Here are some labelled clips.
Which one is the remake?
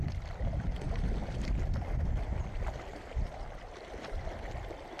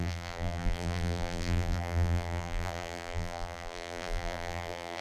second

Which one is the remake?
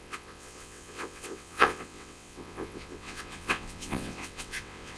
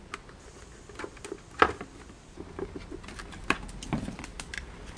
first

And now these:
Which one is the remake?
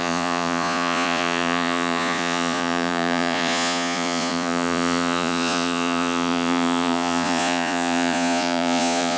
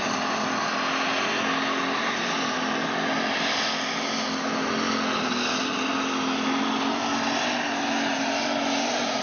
first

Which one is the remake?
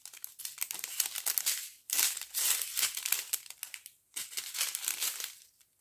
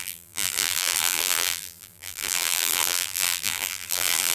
second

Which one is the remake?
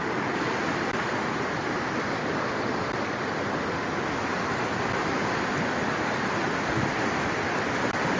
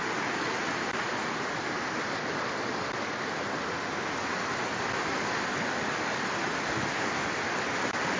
first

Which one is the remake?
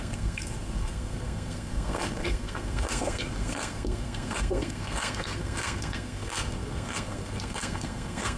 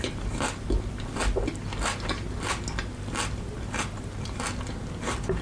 first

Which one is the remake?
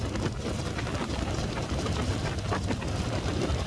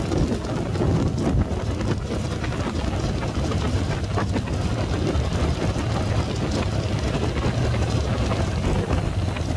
first